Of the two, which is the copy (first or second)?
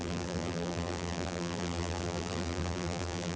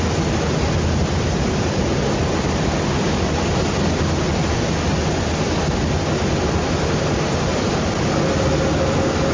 first